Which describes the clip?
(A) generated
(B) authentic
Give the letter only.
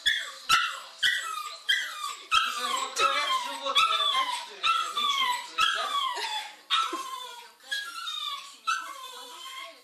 A